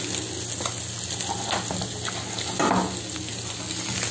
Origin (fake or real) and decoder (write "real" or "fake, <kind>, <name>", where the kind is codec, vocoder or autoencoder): real